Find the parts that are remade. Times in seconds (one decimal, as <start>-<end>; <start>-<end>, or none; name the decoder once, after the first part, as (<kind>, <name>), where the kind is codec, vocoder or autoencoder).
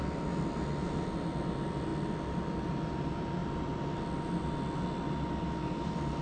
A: none